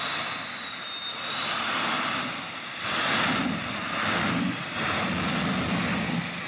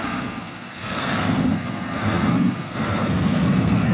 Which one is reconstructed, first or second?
second